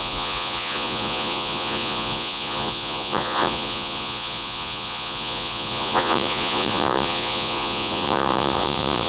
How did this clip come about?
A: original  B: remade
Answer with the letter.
B